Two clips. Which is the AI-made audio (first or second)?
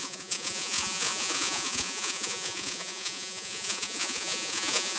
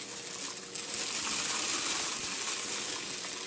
first